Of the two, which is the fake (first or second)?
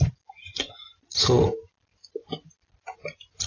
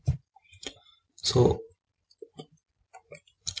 second